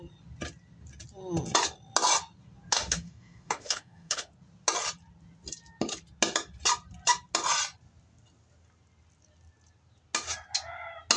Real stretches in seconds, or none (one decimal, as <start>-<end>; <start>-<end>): 0.0-2.7; 4.3-11.2